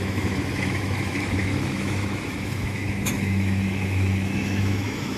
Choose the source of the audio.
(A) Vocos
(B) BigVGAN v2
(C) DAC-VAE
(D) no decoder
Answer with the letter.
C